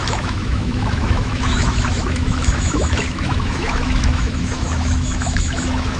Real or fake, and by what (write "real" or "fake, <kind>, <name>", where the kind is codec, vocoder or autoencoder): fake, autoencoder, DAC-VAE